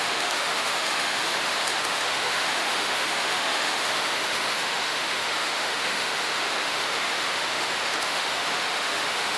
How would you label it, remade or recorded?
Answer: remade